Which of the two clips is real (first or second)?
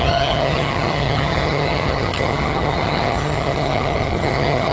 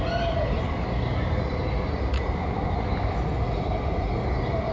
second